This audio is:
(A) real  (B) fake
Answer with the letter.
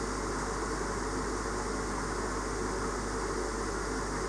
A